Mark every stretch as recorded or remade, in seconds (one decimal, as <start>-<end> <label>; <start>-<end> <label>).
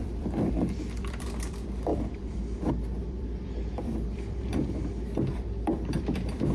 0.0-4.5 remade; 4.5-5.3 recorded; 5.3-6.5 remade